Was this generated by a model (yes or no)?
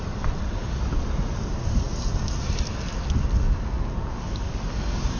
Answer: no